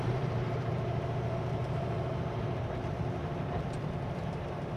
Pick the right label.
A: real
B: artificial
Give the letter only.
B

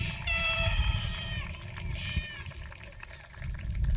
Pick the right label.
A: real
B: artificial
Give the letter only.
B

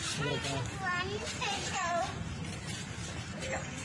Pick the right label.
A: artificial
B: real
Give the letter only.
A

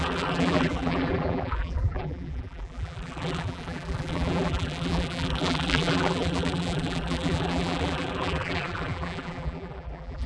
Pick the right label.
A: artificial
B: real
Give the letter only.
A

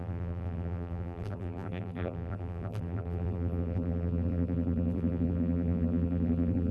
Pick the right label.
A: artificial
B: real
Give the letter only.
A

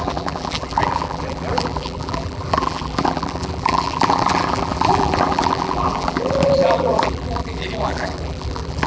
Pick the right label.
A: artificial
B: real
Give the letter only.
A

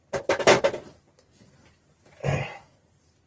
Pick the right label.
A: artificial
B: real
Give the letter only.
B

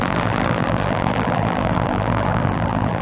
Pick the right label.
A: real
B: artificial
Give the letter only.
B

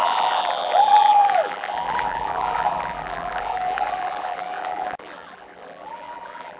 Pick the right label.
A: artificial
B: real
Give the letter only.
A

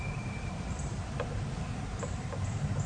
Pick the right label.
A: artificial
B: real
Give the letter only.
A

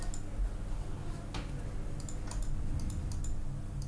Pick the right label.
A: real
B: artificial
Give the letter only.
A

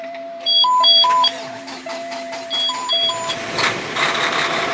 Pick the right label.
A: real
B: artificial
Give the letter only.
B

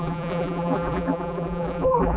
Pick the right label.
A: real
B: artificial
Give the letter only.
B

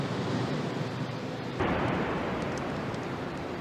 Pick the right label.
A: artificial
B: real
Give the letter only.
A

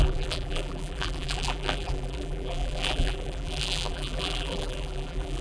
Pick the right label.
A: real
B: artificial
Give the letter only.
B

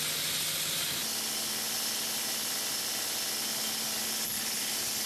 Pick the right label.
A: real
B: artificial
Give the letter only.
A